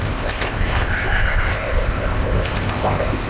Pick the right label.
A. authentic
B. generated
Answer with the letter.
B